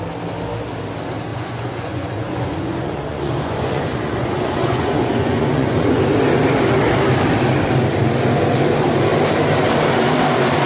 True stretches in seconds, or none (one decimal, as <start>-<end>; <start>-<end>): 0.0-1.3; 6.0-10.7